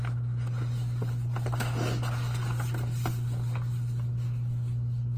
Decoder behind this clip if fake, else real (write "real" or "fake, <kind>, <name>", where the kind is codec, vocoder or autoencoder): real